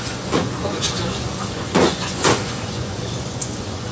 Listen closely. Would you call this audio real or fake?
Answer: fake